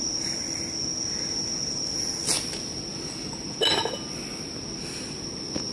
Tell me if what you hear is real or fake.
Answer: real